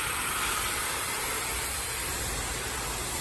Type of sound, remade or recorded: recorded